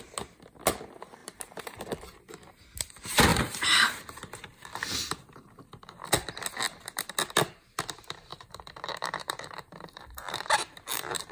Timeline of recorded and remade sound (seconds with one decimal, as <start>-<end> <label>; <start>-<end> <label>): 0.0-1.2 recorded; 1.2-1.9 remade; 1.9-3.3 recorded; 3.3-6.0 remade; 6.0-8.3 recorded; 8.3-11.3 remade